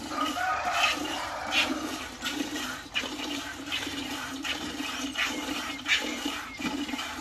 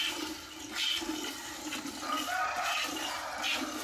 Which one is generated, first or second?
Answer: first